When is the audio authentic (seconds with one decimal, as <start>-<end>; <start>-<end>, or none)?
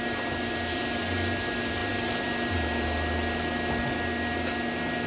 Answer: 0.0-5.1